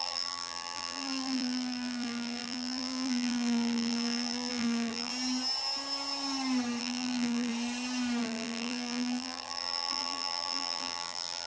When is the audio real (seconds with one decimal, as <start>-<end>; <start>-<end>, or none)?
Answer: 5.1-6.8; 7.5-8.2